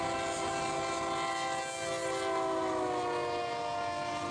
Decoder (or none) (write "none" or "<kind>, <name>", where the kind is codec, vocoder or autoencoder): none